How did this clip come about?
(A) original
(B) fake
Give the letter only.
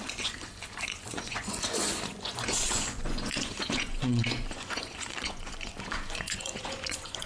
B